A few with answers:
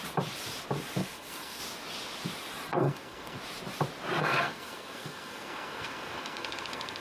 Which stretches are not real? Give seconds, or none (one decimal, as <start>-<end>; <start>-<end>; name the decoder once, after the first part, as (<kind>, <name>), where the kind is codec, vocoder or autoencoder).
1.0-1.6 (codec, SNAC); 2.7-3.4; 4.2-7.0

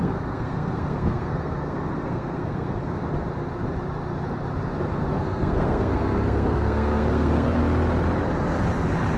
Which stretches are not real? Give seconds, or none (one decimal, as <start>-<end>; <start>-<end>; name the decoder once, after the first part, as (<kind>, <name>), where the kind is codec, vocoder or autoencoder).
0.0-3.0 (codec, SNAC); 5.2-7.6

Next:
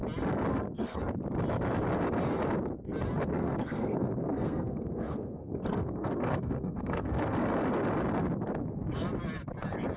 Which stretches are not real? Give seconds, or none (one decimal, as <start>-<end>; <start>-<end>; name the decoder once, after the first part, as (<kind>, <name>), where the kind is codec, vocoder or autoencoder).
0.5-1.0 (codec, SNAC); 3.3-7.6

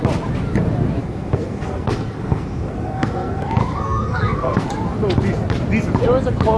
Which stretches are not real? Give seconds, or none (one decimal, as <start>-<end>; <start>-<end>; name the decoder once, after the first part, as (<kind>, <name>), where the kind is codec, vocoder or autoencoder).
1.0-4.7 (codec, SNAC)

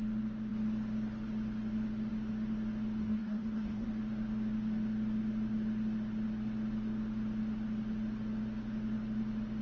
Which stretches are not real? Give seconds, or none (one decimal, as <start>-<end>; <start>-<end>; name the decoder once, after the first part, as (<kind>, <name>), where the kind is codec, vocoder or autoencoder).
3.0-3.9 (codec, SNAC)

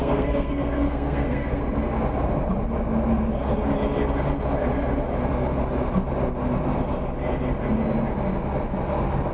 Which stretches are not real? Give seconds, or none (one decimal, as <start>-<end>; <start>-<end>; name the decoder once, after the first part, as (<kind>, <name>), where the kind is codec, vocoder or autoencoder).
0.0-1.6 (codec, SNAC)

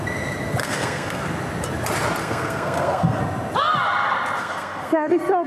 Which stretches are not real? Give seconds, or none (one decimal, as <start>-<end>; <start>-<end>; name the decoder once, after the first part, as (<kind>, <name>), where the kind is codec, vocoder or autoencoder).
0.6-1.2 (codec, SNAC); 2.2-3.2; 4.4-5.1

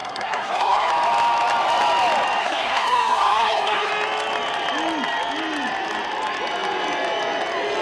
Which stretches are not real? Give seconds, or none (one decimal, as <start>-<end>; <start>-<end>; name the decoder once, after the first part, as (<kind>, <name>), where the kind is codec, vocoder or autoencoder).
0.0-0.9 (codec, SNAC); 2.4-3.9